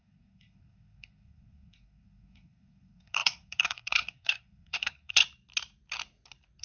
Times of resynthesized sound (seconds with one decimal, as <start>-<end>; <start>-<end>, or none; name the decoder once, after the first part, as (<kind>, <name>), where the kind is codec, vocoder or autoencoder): 0.0-5.2 (codec, SNAC)